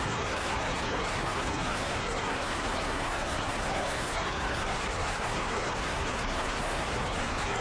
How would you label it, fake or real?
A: fake